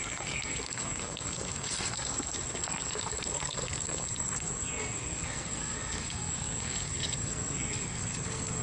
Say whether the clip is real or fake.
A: fake